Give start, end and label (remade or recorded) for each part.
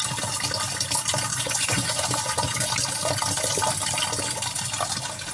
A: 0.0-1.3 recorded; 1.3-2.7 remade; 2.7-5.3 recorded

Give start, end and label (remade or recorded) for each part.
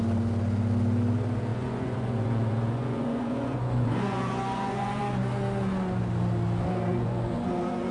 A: 0.0-1.5 recorded; 1.5-5.0 remade; 5.0-6.9 recorded; 6.9-7.9 remade